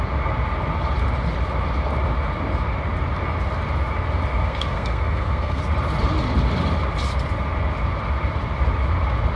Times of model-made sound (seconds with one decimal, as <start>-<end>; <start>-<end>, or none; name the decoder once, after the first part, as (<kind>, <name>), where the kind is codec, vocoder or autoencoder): 4.4-5.6 (codec, SNAC)